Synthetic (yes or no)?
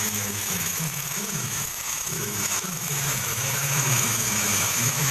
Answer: yes